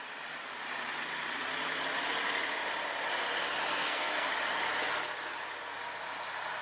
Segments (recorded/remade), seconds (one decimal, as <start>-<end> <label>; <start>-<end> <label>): 0.0-3.7 recorded; 3.7-4.3 remade; 4.3-6.6 recorded